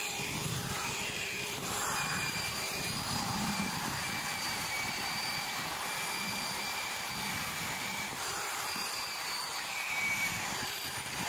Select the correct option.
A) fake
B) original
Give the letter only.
A